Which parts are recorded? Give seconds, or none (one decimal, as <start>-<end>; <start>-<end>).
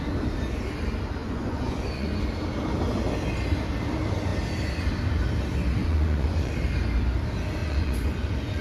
0.0-1.2; 2.1-5.8; 6.5-7.6